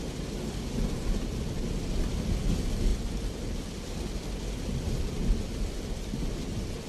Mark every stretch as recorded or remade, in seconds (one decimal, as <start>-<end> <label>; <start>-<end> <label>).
0.0-6.9 recorded